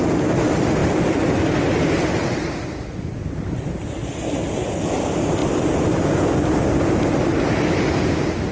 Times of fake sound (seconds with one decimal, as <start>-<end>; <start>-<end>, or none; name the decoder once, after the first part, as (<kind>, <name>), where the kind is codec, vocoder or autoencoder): none